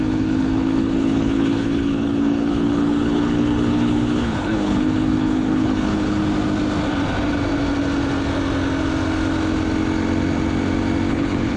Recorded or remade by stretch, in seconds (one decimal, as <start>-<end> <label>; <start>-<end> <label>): 0.0-6.2 remade; 6.2-11.1 recorded; 11.1-11.6 remade